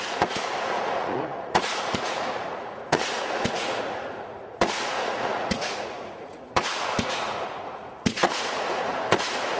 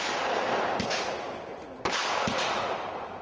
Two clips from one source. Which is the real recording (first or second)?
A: second